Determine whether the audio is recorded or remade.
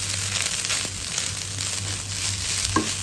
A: recorded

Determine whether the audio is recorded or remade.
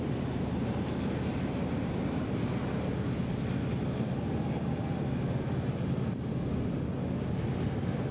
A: recorded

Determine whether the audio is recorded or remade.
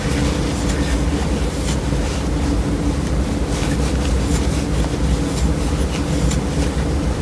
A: recorded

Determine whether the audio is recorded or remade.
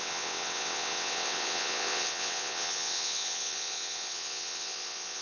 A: remade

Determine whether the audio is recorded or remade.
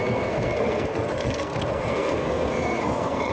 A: remade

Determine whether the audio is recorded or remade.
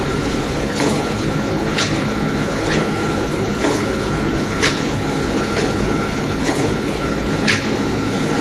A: remade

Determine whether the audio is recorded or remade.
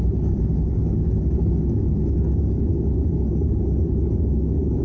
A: remade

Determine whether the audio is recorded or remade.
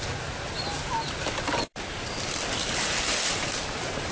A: recorded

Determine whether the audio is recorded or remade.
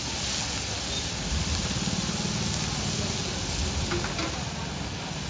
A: recorded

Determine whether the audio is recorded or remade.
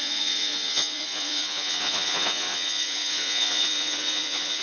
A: remade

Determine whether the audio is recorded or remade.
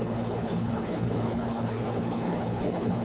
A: remade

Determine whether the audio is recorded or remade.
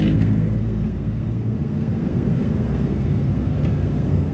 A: remade